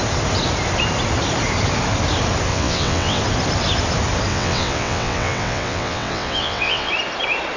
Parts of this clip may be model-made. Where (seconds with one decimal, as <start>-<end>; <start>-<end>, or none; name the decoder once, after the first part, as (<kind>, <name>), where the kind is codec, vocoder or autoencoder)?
2.5-3.2 (vocoder, WaveNeXt); 4.3-6.9

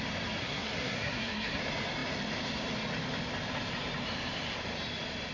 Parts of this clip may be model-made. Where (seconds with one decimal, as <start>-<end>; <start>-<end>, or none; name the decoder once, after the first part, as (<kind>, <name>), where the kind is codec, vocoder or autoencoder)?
0.4-1.6 (codec, SNAC)